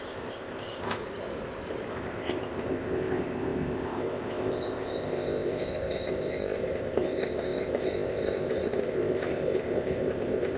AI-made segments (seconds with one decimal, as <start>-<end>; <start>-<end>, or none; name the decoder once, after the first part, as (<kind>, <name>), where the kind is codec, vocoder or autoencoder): 0.0-1.0 (codec, ZipCodec); 1.9-10.6